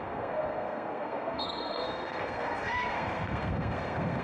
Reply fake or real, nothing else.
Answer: fake